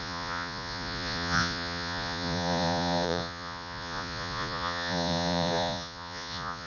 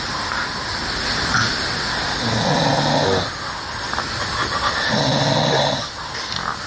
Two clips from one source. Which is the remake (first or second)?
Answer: first